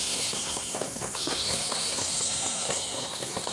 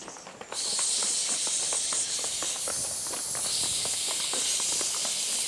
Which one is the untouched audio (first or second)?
second